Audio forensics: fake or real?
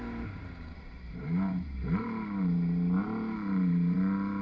fake